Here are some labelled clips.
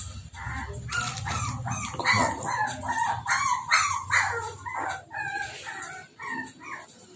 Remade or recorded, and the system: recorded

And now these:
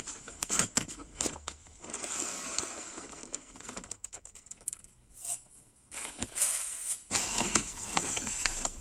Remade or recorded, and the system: remade, codec, SNAC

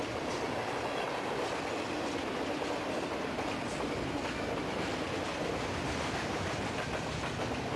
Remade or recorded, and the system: recorded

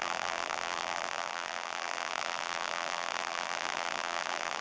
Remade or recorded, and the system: remade, vocoder, BigVGAN v2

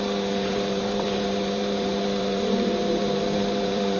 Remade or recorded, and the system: remade, vocoder, BigVGAN v2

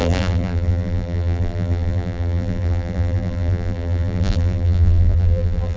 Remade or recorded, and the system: remade, vocoder, BigVGAN v2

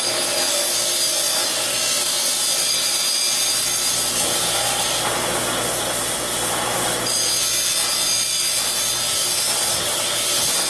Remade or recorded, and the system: recorded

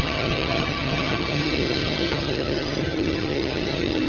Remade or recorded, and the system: remade, vocoder, HiFi-GAN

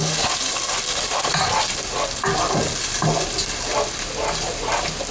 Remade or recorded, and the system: recorded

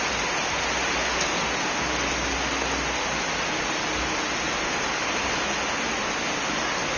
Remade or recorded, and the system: recorded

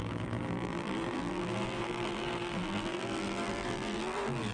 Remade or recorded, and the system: remade, vocoder, BigVGAN v2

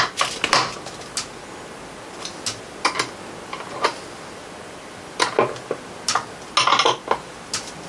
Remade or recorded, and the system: recorded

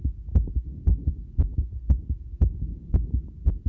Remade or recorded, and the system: recorded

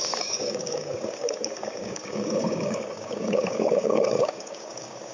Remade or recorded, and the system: remade, codec, DAC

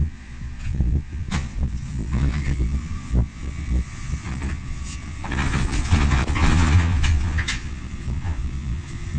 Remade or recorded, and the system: remade, vocoder, Vocos